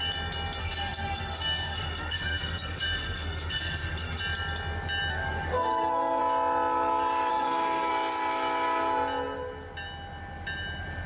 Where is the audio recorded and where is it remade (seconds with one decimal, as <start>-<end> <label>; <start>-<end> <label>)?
0.0-0.6 recorded; 0.6-4.2 remade; 4.2-5.1 recorded; 5.1-6.2 remade; 6.2-7.3 recorded; 7.3-7.9 remade; 7.9-11.1 recorded